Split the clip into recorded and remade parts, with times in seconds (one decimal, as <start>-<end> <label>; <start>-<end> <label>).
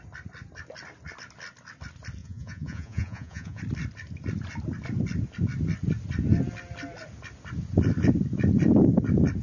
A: 0.0-2.2 recorded; 2.2-3.6 remade; 3.6-9.4 recorded